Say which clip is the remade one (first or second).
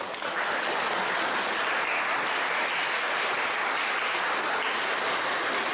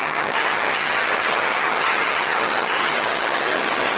second